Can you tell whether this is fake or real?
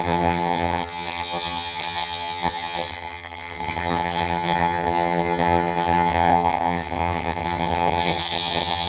fake